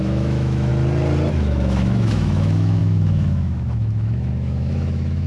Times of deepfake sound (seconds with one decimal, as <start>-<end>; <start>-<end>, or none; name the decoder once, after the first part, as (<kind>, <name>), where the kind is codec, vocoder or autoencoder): 0.0-0.7 (autoencoder, DAC-VAE); 1.3-5.3